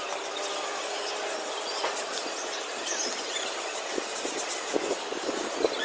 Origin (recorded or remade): recorded